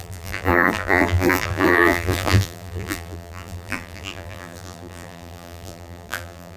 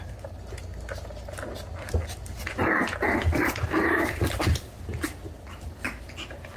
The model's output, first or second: first